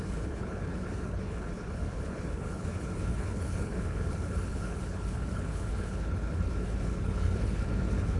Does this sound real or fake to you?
fake